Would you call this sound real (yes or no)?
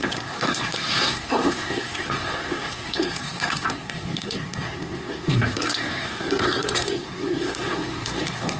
no